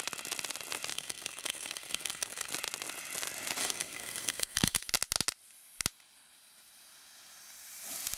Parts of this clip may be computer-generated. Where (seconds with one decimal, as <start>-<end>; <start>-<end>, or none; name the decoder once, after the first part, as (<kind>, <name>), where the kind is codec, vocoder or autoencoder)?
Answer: 0.9-2.5 (codec, SNAC); 3.6-4.9